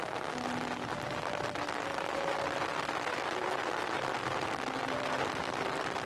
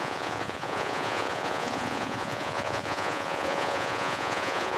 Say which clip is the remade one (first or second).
second